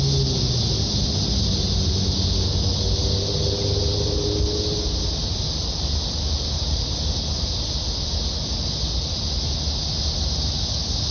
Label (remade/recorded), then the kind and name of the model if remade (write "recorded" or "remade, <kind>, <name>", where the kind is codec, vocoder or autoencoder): recorded